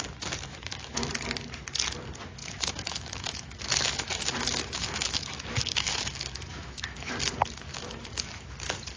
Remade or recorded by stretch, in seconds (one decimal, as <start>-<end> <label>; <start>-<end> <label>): 0.0-0.5 recorded; 0.5-1.1 remade; 1.1-2.4 recorded; 2.4-7.1 remade; 7.1-7.7 recorded; 7.7-8.3 remade; 8.3-9.0 recorded